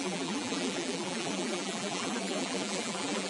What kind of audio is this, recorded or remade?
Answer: remade